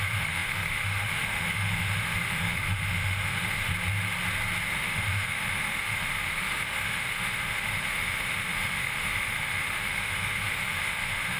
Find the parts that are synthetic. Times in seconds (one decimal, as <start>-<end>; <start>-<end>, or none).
0.0-3.7; 4.7-11.4